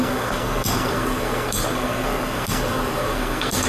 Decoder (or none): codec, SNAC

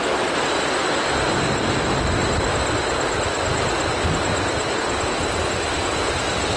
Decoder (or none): none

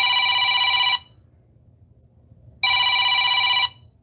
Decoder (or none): none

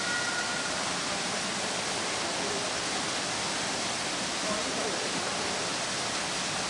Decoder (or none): none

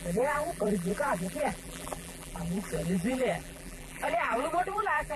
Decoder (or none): vocoder, BigVGAN v2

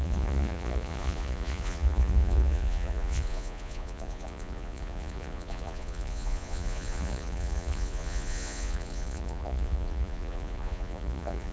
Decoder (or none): vocoder, Vocos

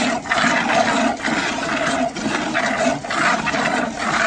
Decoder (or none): none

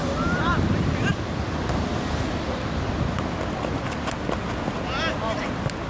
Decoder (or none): none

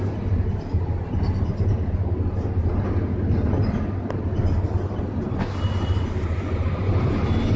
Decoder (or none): none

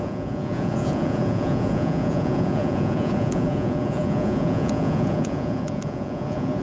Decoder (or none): vocoder, Vocos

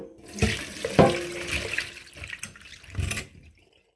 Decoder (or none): none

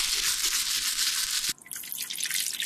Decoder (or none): none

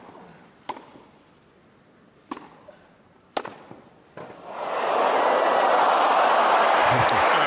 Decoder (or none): none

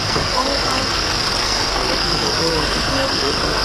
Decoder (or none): codec, SNAC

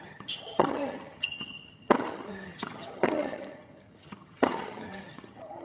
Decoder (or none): vocoder, HiFi-GAN